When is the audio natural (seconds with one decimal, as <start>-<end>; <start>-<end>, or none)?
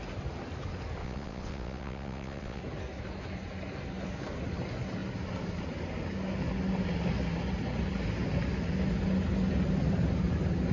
0.0-1.0; 2.6-10.7